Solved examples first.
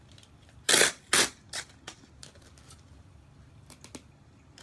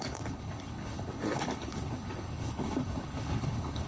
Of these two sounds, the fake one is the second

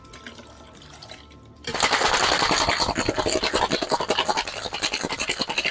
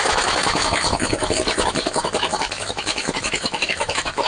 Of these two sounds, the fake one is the second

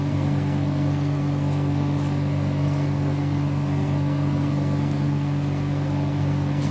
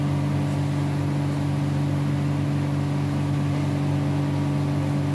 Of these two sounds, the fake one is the first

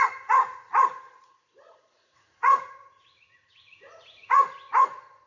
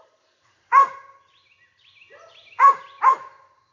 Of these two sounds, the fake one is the first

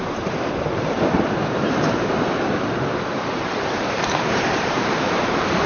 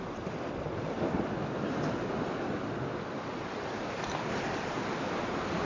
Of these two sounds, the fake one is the first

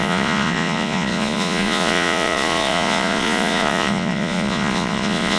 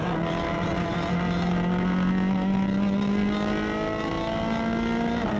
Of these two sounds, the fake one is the first